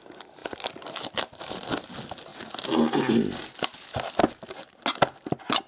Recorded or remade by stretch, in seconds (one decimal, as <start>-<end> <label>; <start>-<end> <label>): 0.0-5.7 recorded